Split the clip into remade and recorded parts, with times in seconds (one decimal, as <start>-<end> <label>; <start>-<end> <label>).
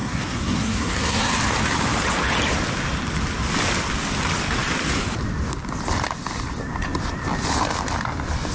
0.0-1.3 remade; 1.3-8.5 recorded